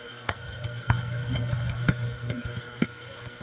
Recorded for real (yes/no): no